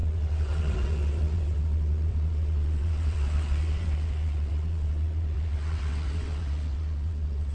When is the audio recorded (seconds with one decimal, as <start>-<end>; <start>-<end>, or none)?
none